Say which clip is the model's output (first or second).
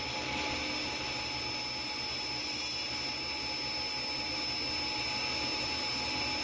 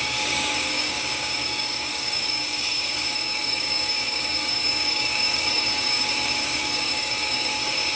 second